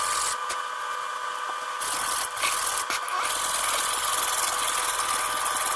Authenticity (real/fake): real